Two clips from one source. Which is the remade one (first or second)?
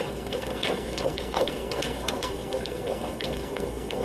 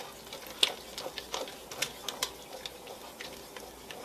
first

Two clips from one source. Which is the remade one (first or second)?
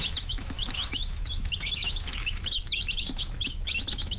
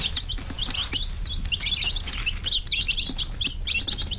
first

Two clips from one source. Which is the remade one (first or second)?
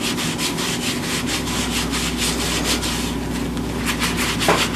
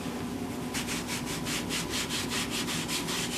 second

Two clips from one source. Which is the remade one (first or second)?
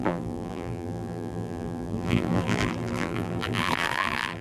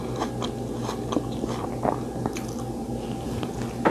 first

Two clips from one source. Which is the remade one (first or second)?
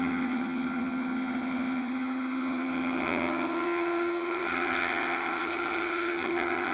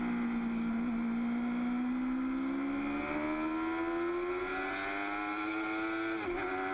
first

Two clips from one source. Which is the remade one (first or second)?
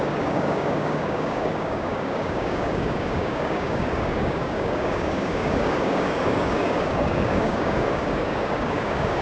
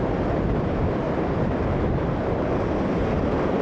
first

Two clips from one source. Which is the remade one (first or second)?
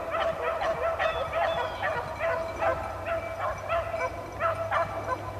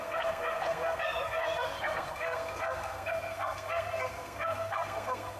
second